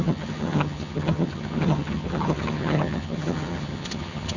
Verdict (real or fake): fake